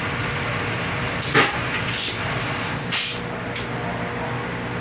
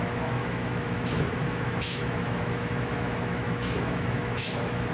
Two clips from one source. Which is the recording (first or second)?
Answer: first